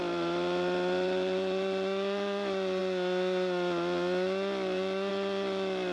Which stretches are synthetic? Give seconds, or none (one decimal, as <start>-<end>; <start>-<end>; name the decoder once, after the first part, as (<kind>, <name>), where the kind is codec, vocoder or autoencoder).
0.0-2.8 (vocoder, BigVGAN v2); 5.1-5.9